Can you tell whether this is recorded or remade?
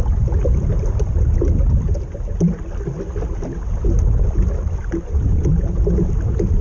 recorded